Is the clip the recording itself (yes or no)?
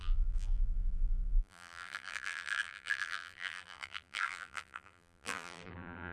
no